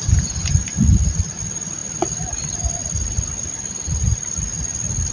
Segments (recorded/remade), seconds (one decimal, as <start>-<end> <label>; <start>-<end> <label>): 0.0-5.1 recorded